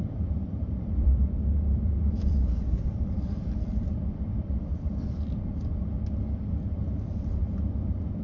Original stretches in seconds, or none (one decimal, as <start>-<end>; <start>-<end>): none